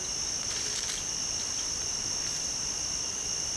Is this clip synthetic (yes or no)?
no